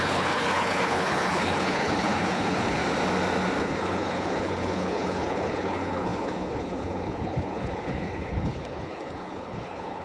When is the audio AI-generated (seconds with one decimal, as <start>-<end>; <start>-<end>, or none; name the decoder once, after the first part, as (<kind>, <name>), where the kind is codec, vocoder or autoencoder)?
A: 0.0-2.8 (codec, HILCodec); 3.6-10.0